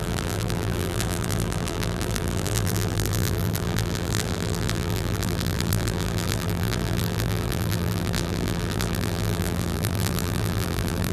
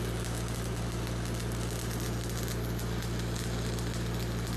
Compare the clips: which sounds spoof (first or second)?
first